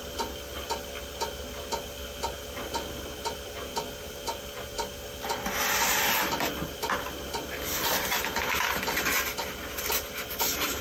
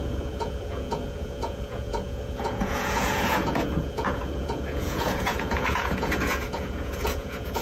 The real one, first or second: first